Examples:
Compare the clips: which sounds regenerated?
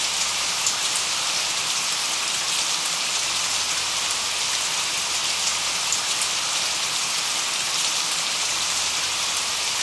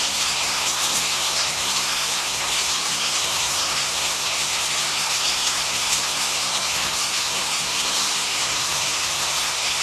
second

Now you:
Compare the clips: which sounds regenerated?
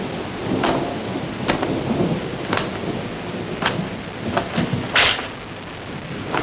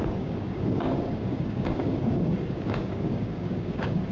second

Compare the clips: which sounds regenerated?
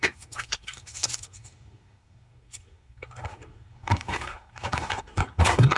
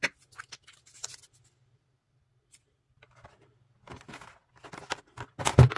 first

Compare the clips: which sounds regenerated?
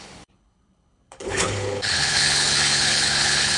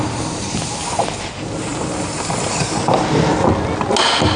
first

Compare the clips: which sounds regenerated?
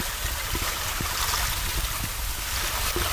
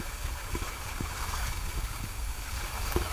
second